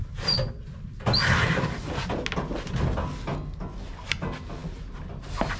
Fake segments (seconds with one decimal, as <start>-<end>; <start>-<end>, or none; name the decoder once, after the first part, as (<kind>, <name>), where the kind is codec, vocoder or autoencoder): none